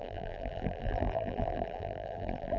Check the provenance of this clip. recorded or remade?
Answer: remade